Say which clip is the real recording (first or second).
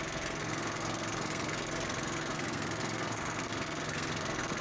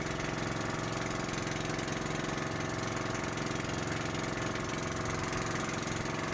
second